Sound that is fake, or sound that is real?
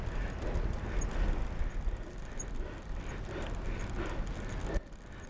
real